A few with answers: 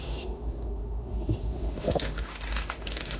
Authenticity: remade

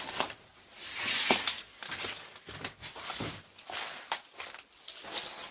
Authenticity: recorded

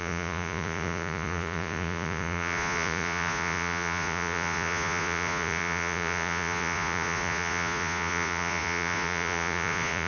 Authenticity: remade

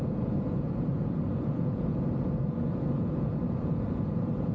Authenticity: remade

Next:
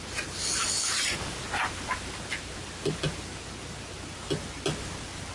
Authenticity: recorded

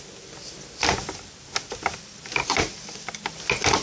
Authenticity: recorded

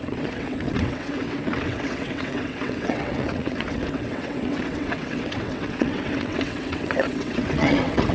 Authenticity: remade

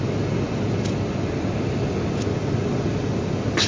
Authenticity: recorded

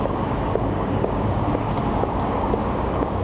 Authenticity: remade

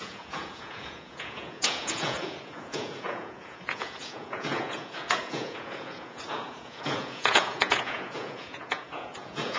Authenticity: remade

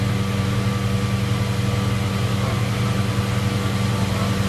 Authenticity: recorded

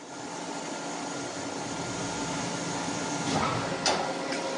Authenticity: recorded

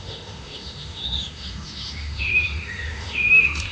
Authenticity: remade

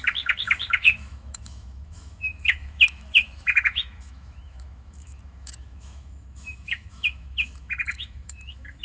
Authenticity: remade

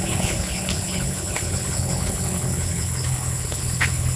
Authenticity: remade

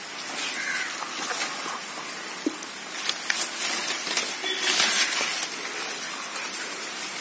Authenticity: recorded